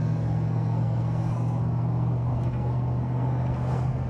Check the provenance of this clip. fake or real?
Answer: fake